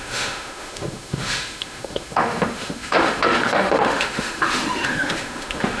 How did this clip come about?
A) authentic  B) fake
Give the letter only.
B